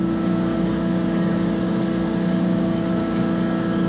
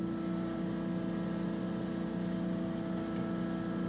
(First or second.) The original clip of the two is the second